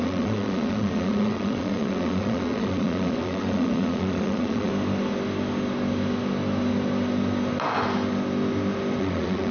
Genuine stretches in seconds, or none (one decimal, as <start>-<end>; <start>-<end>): 4.7-9.0